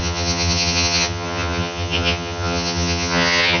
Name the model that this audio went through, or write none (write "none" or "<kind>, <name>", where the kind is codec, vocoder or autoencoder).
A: vocoder, HiFi-GAN